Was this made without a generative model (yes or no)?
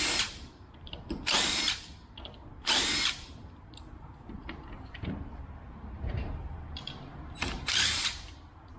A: no